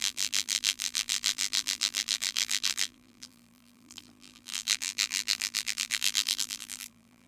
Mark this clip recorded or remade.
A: remade